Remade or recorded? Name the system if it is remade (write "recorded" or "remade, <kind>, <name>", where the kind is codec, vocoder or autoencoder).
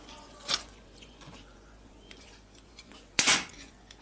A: remade, vocoder, Vocos